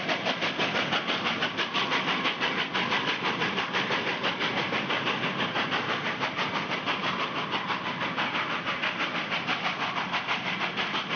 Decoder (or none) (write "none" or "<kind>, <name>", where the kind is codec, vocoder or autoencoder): none